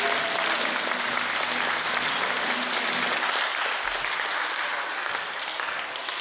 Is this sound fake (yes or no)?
no